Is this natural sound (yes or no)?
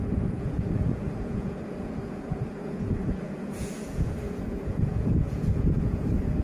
no